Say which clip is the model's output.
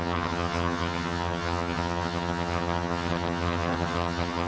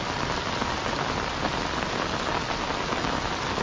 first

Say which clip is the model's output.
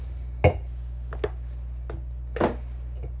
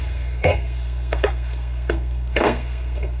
second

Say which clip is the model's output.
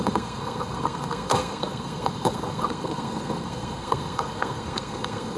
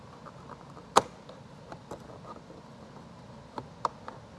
first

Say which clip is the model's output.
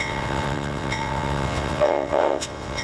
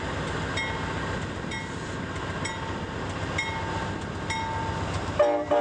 first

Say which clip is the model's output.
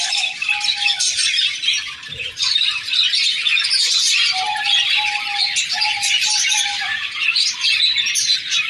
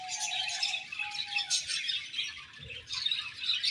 first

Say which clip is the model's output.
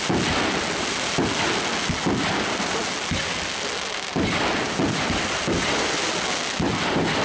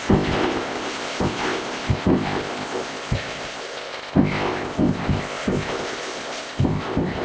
second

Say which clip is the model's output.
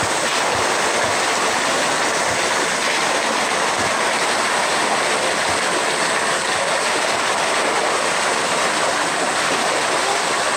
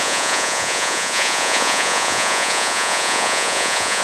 second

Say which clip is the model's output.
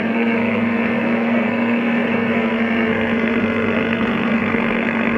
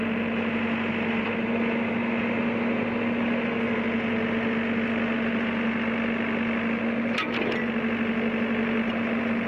first